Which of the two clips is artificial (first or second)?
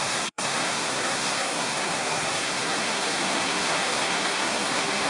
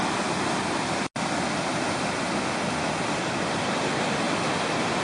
first